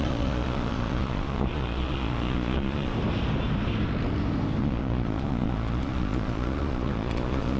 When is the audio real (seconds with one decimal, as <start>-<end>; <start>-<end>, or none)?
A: 2.9-4.6